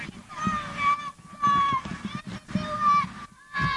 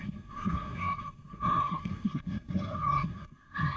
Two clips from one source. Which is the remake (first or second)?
second